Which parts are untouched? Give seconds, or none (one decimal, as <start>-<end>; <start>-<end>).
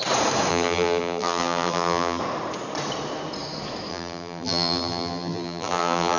0.0-0.5; 2.2-3.9